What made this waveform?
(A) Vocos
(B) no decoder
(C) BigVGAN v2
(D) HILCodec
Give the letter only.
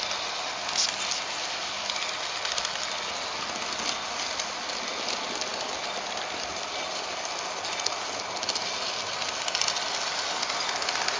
B